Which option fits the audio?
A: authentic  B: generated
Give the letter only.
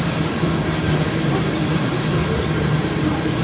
B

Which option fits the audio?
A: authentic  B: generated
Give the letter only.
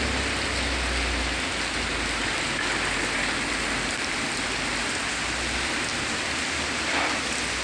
A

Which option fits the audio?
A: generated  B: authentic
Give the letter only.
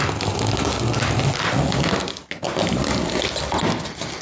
B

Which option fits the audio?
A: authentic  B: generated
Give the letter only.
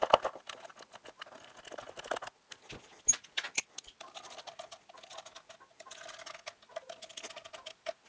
A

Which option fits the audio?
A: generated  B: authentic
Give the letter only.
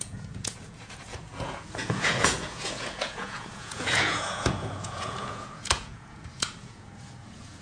A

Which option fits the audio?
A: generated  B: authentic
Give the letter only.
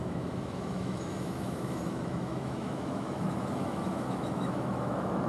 A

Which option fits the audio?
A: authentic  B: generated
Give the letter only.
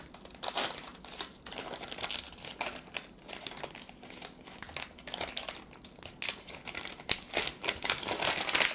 A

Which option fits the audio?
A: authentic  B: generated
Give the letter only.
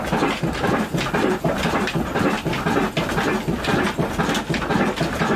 A